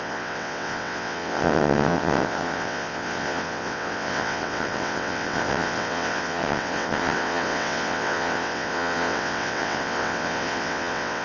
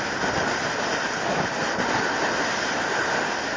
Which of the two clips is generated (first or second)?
first